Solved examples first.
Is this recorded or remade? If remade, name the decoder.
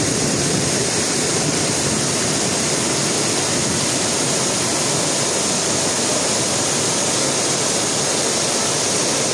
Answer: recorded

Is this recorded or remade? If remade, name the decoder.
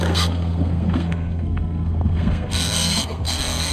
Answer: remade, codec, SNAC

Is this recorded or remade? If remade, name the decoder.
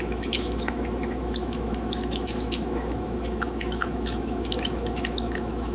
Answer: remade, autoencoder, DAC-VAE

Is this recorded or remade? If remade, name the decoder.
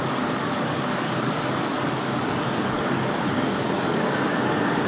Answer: remade, codec, DAC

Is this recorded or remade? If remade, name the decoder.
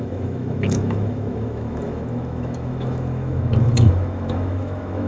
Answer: remade, autoencoder, DAC-VAE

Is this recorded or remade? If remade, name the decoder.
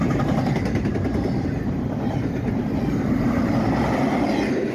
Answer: recorded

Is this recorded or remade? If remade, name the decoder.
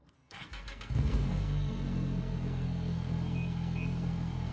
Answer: remade, codec, SNAC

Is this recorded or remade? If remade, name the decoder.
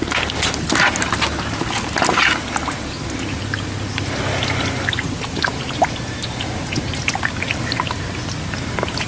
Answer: recorded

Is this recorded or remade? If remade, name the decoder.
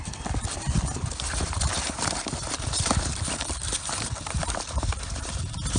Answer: remade, vocoder, BigVGAN v2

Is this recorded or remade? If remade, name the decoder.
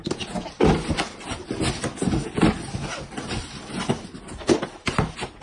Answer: recorded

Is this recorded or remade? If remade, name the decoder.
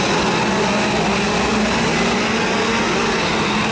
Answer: recorded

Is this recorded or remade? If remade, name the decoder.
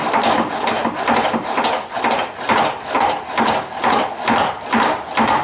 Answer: recorded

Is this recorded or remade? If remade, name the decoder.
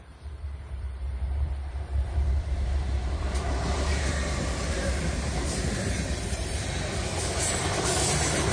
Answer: remade, vocoder, BigVGAN v2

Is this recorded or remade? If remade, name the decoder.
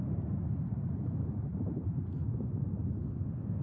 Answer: recorded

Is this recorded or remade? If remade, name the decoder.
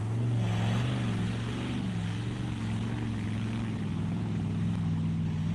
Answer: recorded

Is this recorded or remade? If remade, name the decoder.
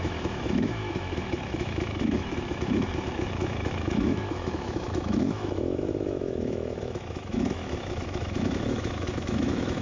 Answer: remade, autoencoder, DAC-VAE